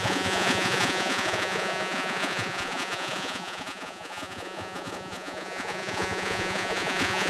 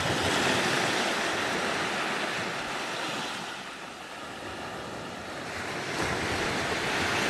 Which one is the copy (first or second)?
first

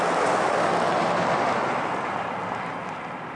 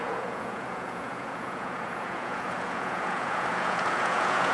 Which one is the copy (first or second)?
second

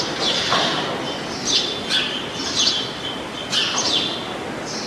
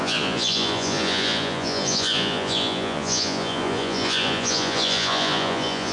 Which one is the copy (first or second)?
second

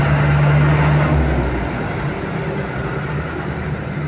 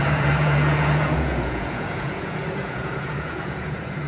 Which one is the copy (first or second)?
second